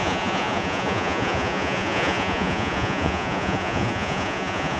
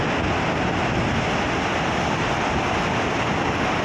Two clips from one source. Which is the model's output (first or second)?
first